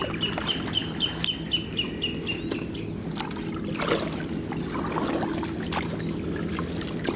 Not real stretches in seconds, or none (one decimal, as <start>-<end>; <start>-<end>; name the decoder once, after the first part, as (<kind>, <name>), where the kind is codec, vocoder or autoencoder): none